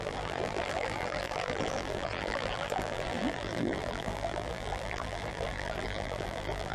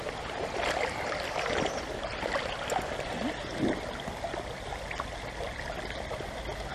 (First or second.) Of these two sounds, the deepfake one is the first